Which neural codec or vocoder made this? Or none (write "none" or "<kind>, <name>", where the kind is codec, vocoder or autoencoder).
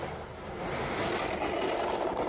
none